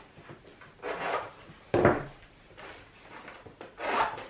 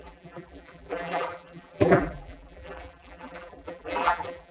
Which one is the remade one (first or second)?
second